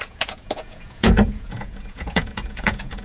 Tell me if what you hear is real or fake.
fake